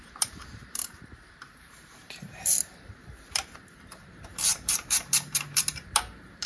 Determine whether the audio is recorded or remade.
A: remade